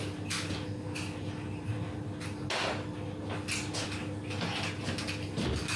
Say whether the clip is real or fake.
real